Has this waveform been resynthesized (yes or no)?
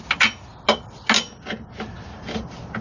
no